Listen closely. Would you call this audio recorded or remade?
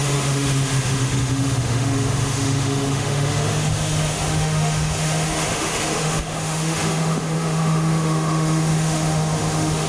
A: remade